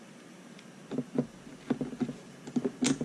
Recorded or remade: recorded